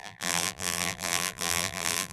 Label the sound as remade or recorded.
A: remade